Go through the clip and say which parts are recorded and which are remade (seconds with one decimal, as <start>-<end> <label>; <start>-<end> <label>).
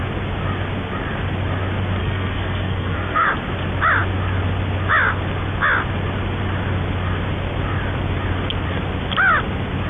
0.0-2.0 recorded; 2.0-3.3 remade; 3.3-9.9 recorded